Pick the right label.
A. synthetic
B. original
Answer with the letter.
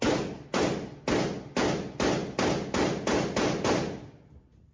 B